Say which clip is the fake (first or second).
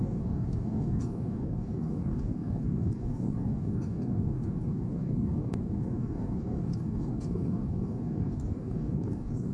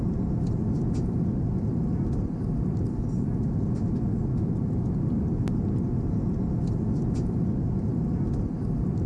first